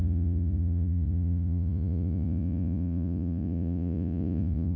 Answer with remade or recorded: remade